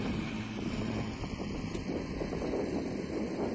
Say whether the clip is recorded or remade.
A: recorded